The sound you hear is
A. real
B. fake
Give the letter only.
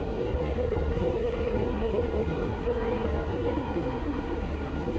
B